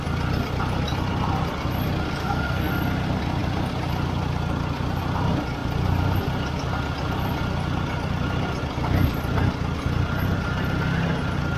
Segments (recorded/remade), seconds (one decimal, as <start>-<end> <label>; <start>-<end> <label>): 0.0-2.2 recorded; 2.2-2.7 remade; 2.7-11.6 recorded